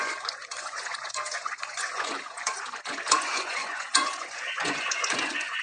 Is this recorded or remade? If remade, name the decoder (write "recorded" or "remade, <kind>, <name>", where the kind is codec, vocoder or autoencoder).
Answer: remade, vocoder, Vocos